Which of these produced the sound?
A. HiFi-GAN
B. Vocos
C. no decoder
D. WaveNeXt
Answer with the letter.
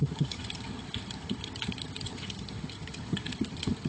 A